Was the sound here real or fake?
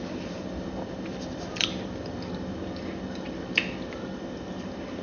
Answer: real